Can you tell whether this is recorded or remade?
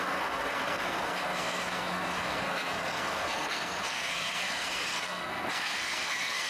remade